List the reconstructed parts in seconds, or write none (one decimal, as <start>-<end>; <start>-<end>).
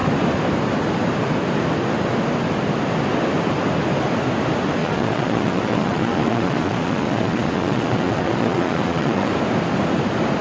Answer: 4.8-9.3